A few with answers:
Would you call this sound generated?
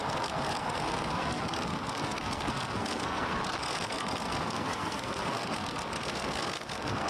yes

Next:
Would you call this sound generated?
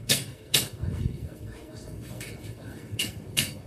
yes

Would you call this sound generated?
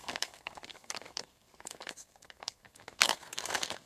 yes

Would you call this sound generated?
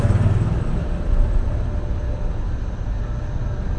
no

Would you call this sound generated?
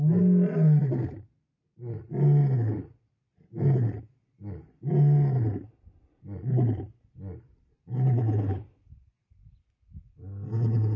no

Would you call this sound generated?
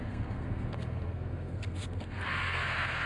yes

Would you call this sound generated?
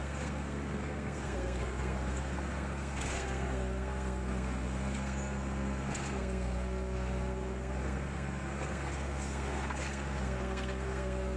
yes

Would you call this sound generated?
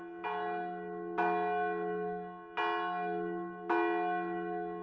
no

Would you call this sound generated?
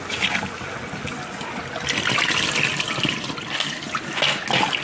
no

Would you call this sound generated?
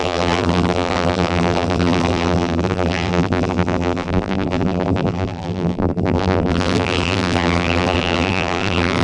yes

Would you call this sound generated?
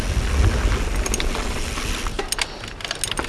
no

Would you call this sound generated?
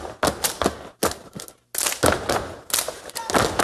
no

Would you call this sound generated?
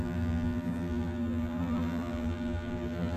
yes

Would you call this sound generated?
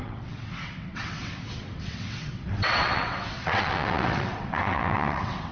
yes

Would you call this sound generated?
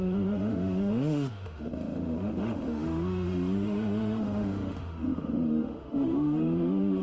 yes